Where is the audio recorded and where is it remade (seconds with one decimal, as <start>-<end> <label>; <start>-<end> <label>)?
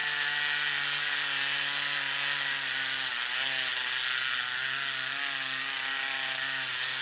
0.0-7.0 recorded